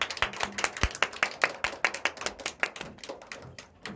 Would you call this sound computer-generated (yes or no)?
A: no